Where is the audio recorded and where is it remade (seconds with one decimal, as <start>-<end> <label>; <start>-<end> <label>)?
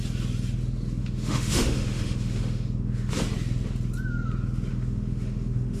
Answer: 0.0-1.0 recorded; 1.0-3.1 remade; 3.1-4.7 recorded; 4.7-5.8 remade